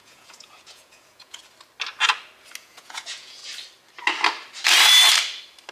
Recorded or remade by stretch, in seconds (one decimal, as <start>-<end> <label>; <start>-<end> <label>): 0.0-1.4 remade; 1.4-2.6 recorded; 2.6-3.4 remade; 3.4-5.7 recorded